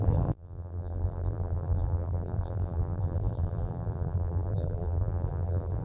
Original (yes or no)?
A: no